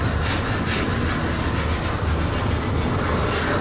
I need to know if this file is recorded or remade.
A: recorded